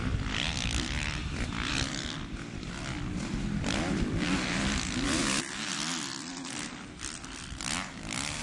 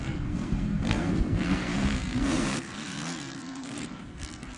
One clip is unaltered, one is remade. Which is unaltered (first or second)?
first